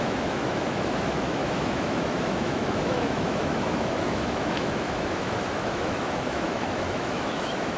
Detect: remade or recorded remade